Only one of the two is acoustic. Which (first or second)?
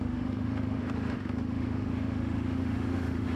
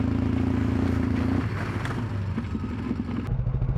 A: second